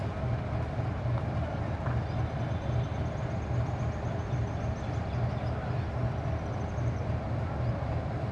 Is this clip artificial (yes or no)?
no